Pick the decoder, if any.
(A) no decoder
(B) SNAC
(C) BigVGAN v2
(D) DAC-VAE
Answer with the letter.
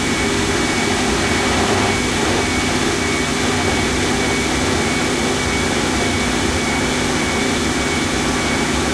A